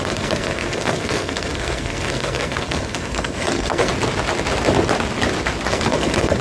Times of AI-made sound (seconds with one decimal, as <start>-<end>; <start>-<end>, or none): 0.0-3.9; 5.7-6.4